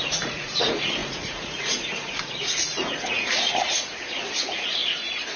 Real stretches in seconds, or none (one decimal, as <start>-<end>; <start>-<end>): none